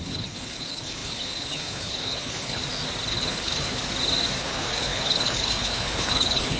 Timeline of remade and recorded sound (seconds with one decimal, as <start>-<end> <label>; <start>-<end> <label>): 0.0-2.6 remade; 2.6-3.1 recorded; 3.1-3.8 remade; 3.8-4.4 recorded; 4.4-6.6 remade